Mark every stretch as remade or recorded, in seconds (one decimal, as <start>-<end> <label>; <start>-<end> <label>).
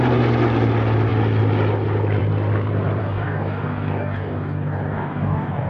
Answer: 0.0-3.0 recorded; 3.0-5.7 remade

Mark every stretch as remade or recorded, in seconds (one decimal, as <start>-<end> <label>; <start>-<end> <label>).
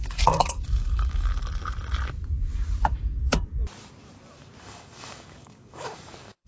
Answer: 0.0-1.3 remade; 1.3-4.6 recorded; 4.6-6.5 remade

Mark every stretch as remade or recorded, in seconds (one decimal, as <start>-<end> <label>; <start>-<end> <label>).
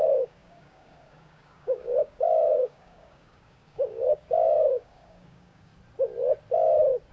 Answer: 0.0-5.7 remade; 5.7-7.1 recorded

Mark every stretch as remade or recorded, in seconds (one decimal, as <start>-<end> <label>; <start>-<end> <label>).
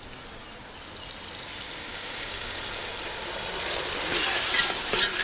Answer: 0.0-1.9 recorded; 1.9-2.6 remade; 2.6-5.2 recorded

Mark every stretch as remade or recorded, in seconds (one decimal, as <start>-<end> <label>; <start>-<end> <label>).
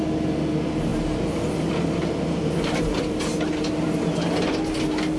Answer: 0.0-5.2 recorded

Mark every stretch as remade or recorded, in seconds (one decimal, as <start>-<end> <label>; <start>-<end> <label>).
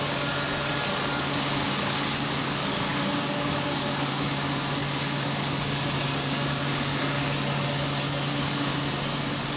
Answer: 0.0-8.7 remade; 8.7-9.2 recorded; 9.2-9.6 remade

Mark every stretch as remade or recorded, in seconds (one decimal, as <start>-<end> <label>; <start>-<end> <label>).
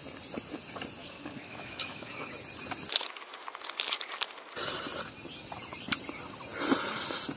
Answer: 0.0-1.0 recorded; 1.0-2.3 remade; 2.3-7.4 recorded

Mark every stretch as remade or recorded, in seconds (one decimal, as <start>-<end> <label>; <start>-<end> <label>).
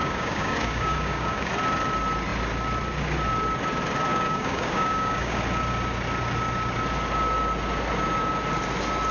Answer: 0.0-1.5 remade; 1.5-4.1 recorded; 4.1-5.4 remade; 5.4-9.1 recorded